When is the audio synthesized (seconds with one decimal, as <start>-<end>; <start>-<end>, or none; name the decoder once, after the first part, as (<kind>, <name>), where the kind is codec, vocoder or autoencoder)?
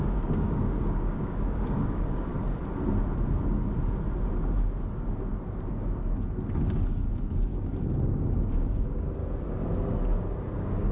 0.0-2.3 (codec, DAC); 7.1-9.2; 10.5-10.9